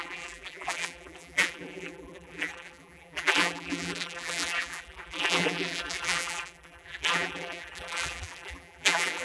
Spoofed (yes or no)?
yes